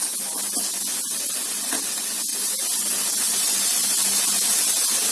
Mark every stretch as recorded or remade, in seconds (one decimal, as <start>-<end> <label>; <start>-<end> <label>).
0.0-5.1 recorded